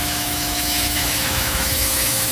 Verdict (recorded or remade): remade